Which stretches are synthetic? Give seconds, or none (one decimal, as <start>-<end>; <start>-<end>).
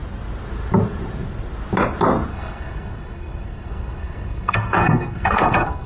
2.3-5.9